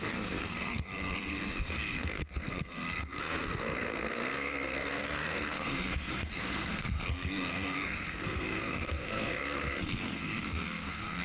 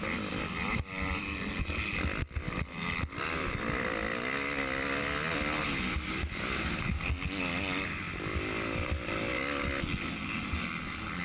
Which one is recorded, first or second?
second